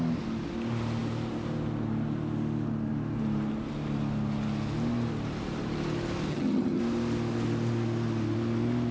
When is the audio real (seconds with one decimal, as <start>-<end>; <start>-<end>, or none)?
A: 0.0-6.3; 6.8-8.9